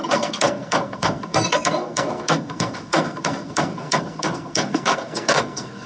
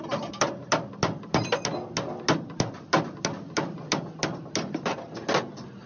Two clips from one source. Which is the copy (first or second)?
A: first